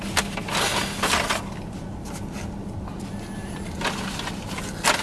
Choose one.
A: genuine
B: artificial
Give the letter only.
A